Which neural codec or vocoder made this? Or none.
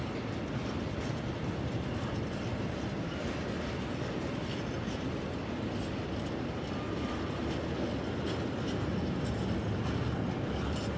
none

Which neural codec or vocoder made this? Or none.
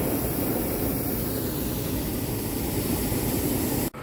none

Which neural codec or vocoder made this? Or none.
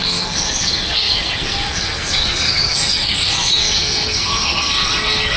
codec, SNAC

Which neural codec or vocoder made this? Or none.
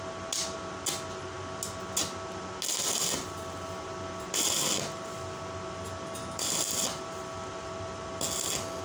none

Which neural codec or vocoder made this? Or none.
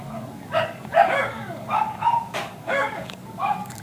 codec, DAC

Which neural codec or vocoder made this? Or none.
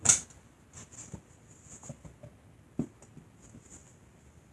none